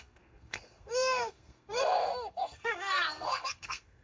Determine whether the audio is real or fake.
fake